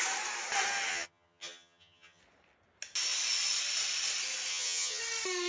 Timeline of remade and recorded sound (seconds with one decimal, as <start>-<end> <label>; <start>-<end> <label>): 0.0-0.9 recorded; 0.9-2.2 remade; 2.2-4.5 recorded; 4.5-5.0 remade; 5.0-5.5 recorded